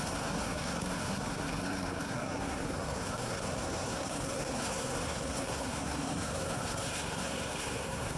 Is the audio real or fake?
fake